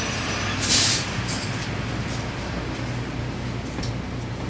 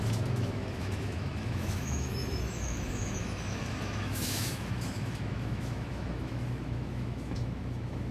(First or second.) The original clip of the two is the first